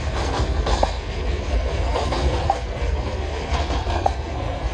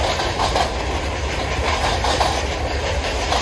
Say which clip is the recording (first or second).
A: second